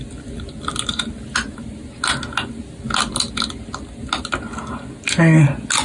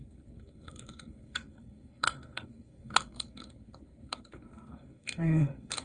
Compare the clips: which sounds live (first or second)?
first